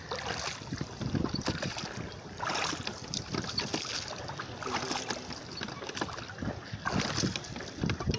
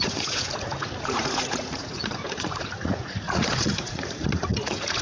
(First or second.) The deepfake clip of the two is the second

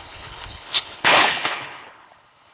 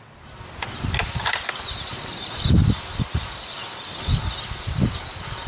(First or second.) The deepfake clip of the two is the first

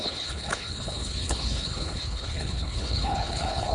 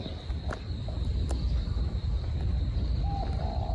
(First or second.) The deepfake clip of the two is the first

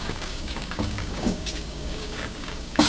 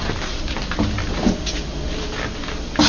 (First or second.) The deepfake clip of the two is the first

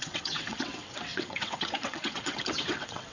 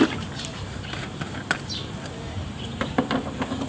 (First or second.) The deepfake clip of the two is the first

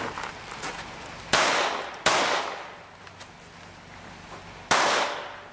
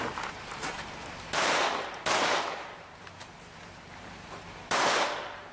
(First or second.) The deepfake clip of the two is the second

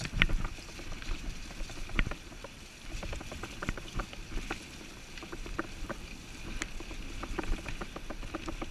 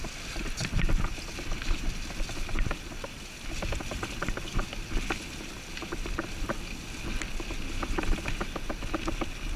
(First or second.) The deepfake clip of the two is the first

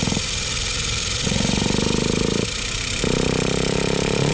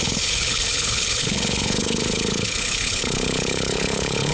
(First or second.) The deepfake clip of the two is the second